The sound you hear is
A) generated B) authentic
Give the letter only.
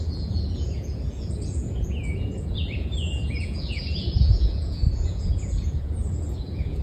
A